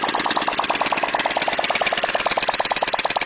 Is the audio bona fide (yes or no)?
yes